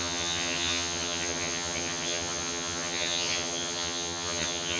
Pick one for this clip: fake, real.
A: fake